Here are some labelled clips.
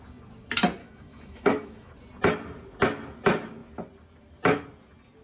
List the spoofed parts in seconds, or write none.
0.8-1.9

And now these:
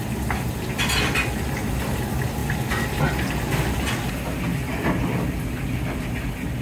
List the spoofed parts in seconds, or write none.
none